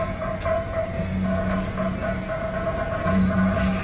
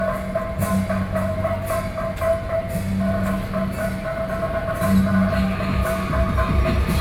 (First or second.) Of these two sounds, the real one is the second